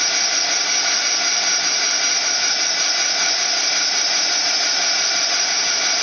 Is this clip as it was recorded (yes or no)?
yes